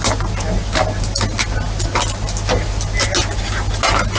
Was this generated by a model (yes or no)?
no